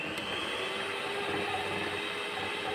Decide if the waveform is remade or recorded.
recorded